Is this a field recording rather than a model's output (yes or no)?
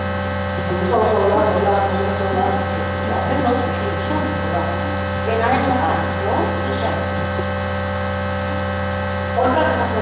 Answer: yes